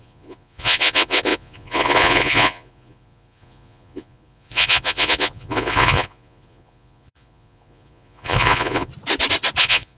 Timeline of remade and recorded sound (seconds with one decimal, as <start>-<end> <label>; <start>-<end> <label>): 0.0-8.9 remade; 8.9-9.6 recorded; 9.6-10.0 remade